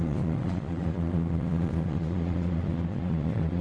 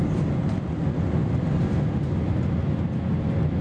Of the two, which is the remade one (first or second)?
first